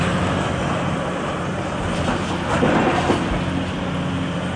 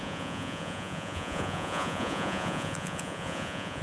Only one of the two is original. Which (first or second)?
first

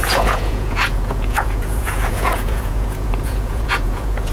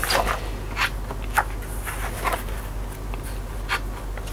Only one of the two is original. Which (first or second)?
second